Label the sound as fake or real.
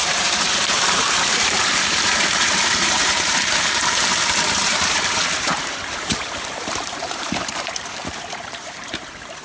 fake